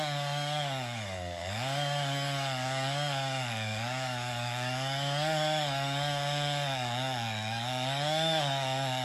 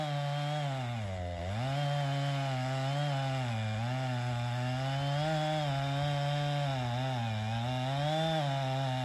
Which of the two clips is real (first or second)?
second